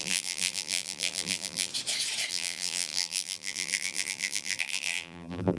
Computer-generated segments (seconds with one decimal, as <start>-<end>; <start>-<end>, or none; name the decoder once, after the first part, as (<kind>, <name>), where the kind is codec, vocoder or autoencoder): 0.0-1.7 (vocoder, BigVGAN v2); 2.3-5.6